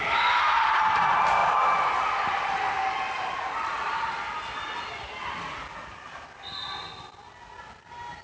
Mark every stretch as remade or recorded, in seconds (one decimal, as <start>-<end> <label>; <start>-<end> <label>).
0.0-8.2 recorded